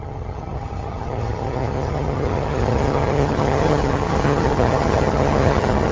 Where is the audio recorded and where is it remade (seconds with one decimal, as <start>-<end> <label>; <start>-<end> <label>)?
0.0-5.9 remade